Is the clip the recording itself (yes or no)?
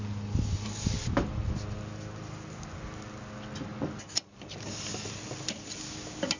yes